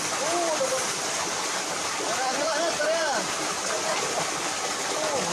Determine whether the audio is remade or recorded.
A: remade